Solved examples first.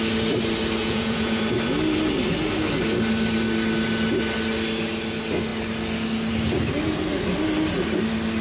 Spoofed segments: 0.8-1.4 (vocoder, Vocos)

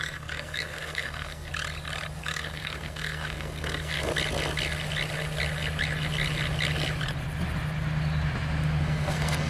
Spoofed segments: 0.0-1.5 (codec, SNAC); 2.2-4.1; 8.8-9.5

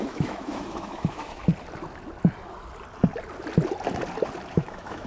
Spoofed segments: 0.0-1.4 (autoencoder, DAC-VAE); 4.5-5.1

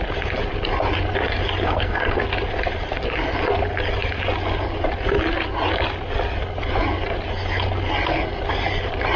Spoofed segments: 1.6-2.2 (codec, SNAC)

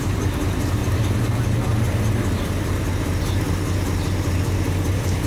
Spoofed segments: none

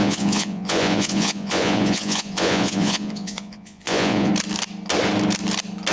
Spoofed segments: 0.0-4.3 (vocoder, Vocos)

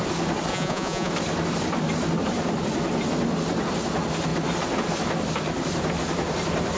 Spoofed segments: 0.5-1.1 (vocoder, Vocos)